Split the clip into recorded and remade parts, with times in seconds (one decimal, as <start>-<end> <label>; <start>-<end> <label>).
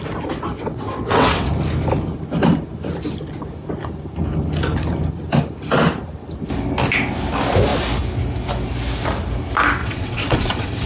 0.0-0.5 recorded; 0.5-1.5 remade; 1.5-9.8 recorded; 9.8-10.9 remade